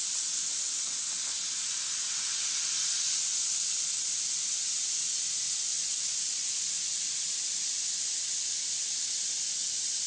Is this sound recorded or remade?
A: recorded